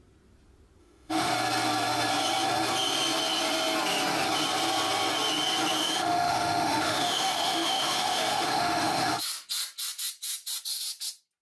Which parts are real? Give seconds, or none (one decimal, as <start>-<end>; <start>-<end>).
0.0-0.8; 1.3-5.8; 9.1-11.4